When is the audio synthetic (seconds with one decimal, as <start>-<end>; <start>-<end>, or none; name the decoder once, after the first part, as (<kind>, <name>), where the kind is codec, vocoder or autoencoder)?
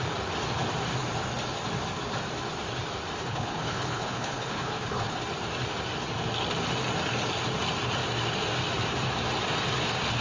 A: 3.2-5.2 (codec, HILCodec)